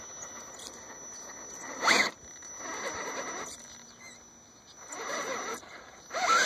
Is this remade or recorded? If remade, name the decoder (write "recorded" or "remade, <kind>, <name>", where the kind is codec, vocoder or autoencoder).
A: recorded